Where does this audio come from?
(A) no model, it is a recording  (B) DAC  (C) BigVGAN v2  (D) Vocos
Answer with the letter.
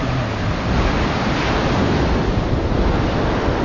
A